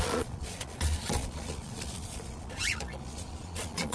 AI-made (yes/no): yes